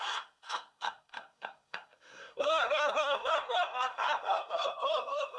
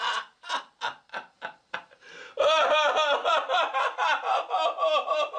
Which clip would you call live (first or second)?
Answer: second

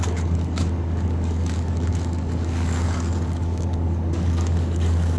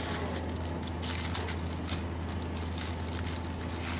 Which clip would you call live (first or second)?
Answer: second